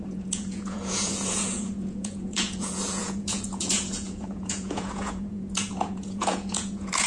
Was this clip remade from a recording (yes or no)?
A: yes